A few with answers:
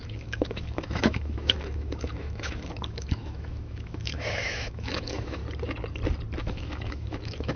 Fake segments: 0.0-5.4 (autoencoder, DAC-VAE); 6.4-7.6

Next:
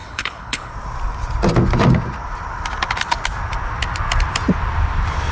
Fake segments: 0.0-0.7 (codec, HILCodec)

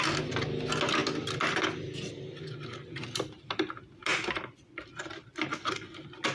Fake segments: none

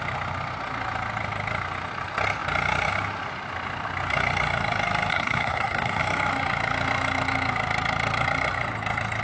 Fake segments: 5.1-6.0 (codec, SNAC)

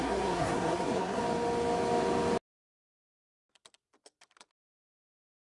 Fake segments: 0.0-1.2 (codec, SNAC); 4.5-5.5

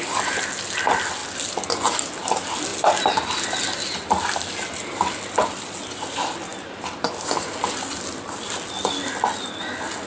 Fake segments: none

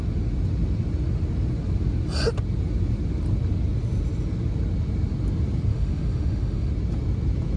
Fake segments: 5.7-6.7 (autoencoder, DAC-VAE)